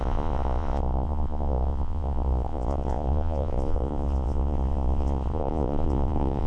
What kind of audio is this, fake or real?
fake